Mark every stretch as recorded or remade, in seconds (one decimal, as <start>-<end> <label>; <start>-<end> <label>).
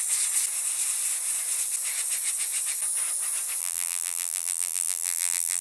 0.0-3.6 recorded; 3.6-5.6 remade